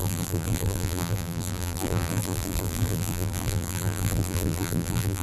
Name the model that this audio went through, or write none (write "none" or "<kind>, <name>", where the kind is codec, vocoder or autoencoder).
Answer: vocoder, BigVGAN v2